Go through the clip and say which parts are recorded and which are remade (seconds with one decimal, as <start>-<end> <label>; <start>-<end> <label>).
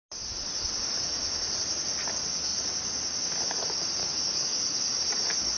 0.0-4.0 recorded; 4.0-5.0 remade; 5.0-5.6 recorded